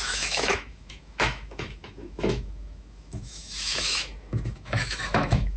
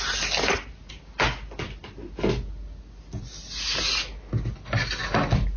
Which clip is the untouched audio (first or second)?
second